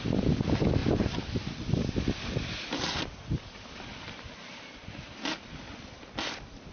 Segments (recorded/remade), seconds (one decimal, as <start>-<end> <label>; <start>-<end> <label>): 0.0-6.7 recorded

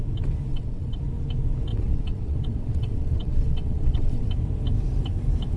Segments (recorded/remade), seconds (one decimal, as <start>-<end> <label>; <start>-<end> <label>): 0.0-0.5 recorded; 0.5-1.0 remade; 1.0-1.7 recorded; 1.7-4.3 remade; 4.3-5.6 recorded

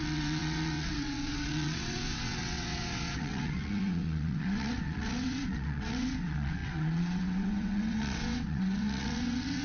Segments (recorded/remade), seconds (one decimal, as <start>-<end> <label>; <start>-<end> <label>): 0.0-9.6 remade

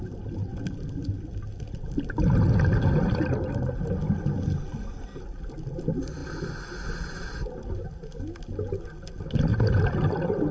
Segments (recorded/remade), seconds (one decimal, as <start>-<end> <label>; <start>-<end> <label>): 0.0-10.5 recorded